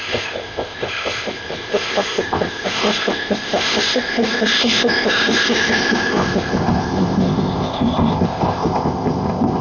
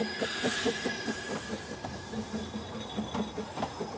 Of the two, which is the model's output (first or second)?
first